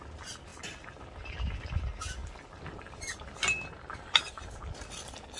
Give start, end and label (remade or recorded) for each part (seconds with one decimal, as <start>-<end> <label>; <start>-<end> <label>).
0.0-5.4 recorded